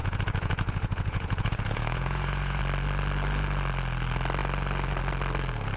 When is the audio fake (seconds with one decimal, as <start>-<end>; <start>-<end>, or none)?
0.0-2.6